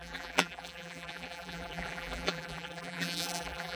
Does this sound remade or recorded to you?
remade